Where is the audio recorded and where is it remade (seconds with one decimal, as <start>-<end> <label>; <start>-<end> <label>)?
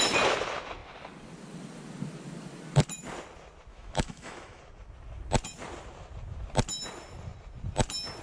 0.0-3.7 recorded; 3.7-4.6 remade; 4.6-8.2 recorded